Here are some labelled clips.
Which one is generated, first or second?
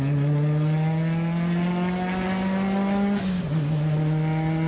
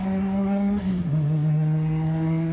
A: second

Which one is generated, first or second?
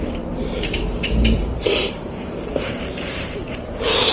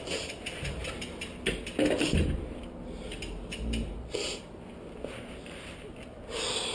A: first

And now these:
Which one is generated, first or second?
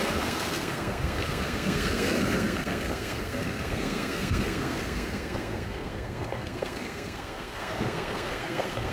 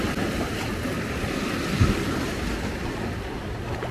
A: first